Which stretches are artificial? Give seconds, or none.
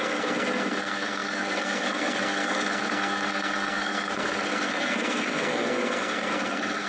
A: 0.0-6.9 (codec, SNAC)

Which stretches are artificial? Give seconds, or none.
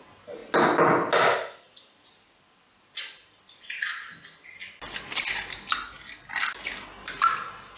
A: none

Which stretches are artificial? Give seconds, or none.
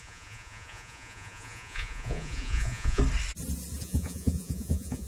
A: 0.0-3.0 (vocoder, Vocos); 3.8-5.1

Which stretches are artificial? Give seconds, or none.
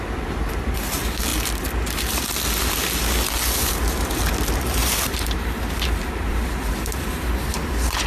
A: 3.6-4.2 (vocoder, BigVGAN v2); 4.8-6.7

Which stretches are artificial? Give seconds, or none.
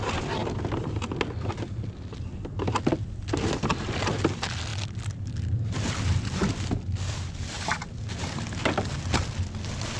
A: none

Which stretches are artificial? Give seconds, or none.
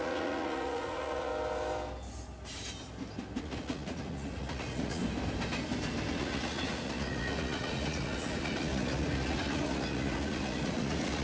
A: 0.0-1.3 (vocoder, Vocos); 3.4-5.0; 6.1-11.2